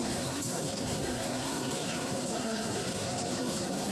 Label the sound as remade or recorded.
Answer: remade